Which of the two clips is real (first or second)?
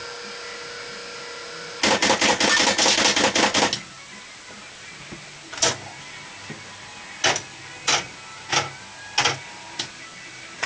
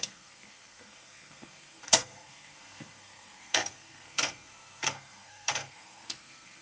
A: first